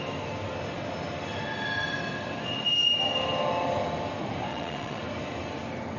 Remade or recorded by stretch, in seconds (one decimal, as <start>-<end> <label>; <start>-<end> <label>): 0.0-4.5 recorded; 4.5-5.0 remade; 5.0-6.0 recorded